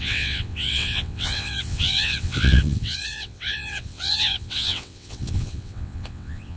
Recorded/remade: remade